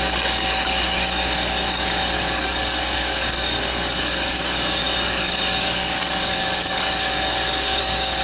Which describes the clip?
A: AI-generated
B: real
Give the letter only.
A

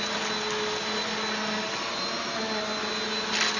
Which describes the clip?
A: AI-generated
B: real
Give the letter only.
B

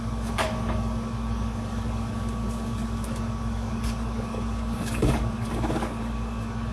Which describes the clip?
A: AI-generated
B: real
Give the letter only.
A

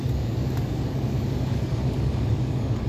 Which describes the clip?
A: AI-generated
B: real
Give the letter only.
A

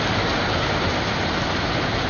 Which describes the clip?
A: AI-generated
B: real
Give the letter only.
B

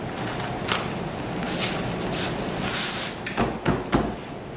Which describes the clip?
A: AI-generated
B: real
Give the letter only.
B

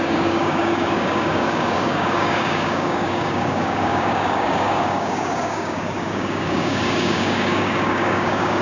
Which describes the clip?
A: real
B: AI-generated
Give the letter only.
B